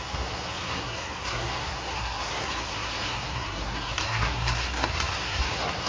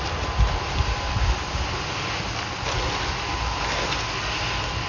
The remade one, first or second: first